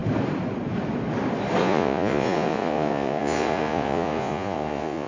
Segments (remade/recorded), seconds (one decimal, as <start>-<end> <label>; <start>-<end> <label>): 0.0-1.6 recorded; 1.6-5.1 remade